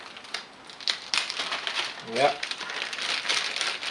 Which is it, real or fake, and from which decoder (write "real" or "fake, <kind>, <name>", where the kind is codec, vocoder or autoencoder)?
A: real